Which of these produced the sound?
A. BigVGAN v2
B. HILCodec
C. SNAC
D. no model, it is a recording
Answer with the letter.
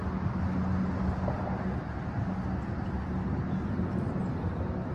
D